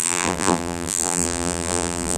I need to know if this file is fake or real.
fake